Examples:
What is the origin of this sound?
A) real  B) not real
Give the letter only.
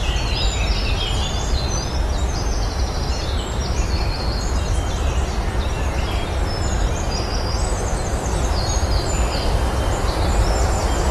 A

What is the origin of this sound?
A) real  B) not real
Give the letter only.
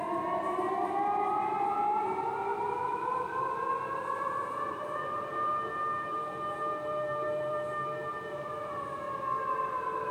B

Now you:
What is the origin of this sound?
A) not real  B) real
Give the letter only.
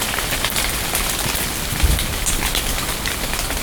B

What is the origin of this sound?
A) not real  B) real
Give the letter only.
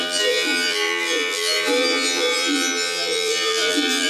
A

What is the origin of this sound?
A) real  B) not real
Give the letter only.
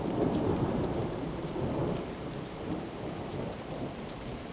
B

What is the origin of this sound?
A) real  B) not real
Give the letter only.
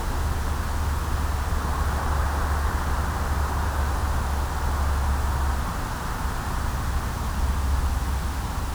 A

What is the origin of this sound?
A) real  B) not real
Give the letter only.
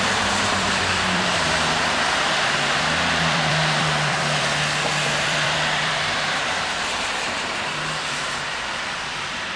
B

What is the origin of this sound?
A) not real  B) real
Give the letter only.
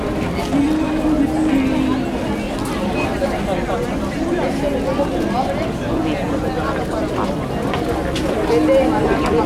B